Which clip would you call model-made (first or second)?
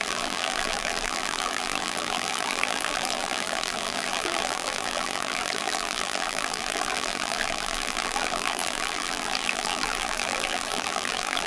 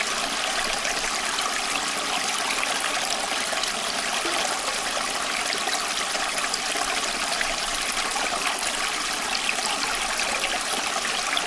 first